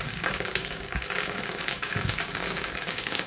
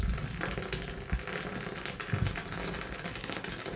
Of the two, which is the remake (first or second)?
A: first